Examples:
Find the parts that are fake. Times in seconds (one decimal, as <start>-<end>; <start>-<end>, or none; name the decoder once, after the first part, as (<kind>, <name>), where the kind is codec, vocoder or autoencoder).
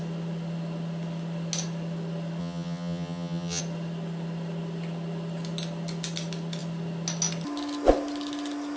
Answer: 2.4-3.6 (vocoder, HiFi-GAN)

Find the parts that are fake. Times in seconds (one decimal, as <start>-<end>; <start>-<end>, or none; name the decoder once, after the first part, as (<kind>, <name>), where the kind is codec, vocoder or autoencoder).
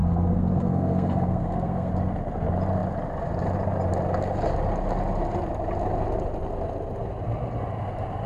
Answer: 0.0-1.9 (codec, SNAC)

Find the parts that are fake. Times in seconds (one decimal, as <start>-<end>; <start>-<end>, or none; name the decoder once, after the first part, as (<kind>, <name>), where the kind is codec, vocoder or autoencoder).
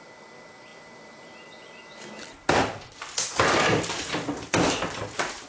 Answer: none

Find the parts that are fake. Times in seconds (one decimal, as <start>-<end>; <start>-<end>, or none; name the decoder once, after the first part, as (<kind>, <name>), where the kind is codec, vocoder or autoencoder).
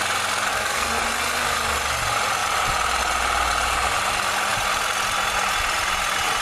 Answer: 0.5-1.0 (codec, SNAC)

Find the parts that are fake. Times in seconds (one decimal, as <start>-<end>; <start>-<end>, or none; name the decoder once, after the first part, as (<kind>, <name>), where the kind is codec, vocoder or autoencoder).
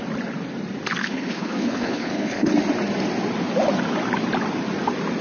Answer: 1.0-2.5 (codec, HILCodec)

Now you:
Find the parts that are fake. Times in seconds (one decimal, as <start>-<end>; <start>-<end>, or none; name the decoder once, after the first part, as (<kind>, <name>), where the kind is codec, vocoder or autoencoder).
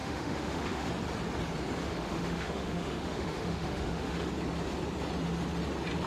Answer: 0.0-0.9 (autoencoder, DAC-VAE); 1.9-4.3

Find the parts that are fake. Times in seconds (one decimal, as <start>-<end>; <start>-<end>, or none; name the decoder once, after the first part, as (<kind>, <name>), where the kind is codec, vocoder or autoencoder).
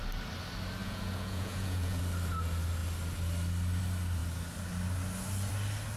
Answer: 0.8-2.0 (vocoder, Vocos)